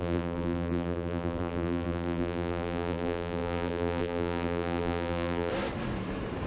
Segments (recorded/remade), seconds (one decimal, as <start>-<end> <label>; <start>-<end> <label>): 0.0-5.5 remade; 5.5-6.5 recorded